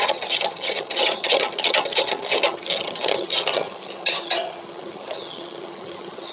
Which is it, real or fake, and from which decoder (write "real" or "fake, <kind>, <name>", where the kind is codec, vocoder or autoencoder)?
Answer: fake, vocoder, HiFi-GAN